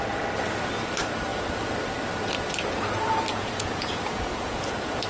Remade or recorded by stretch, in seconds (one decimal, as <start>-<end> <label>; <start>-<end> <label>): 0.0-3.3 recorded; 3.3-4.6 remade; 4.6-5.1 recorded